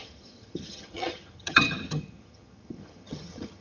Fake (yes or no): yes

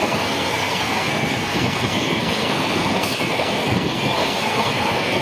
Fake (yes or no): yes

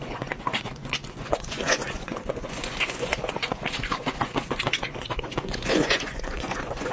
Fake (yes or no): yes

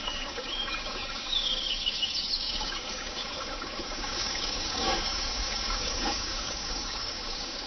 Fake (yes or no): yes